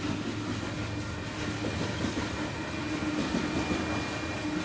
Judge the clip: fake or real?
real